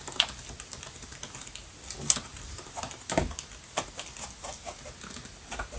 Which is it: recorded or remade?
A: recorded